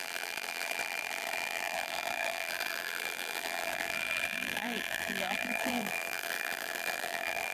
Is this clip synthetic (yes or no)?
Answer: yes